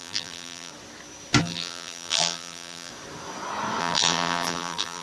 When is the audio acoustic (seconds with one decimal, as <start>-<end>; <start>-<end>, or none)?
0.7-1.4; 2.9-3.8